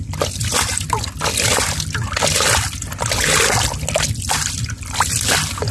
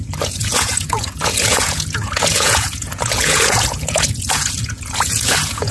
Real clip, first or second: first